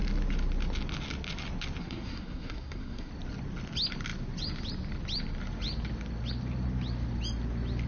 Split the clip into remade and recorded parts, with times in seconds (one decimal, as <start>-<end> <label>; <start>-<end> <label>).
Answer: 0.0-1.8 recorded; 1.8-3.1 remade; 3.1-7.9 recorded